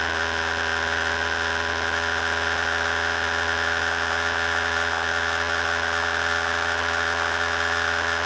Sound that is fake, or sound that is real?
real